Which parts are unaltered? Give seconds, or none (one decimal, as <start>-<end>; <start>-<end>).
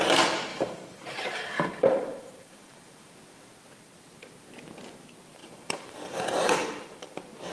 0.0-0.5; 3.1-5.4; 7.1-7.5